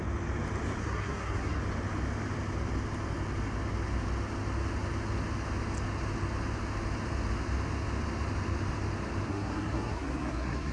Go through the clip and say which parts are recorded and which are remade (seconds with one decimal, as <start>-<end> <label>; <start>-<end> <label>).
0.0-0.8 recorded; 0.8-1.6 remade; 1.6-9.3 recorded; 9.3-10.7 remade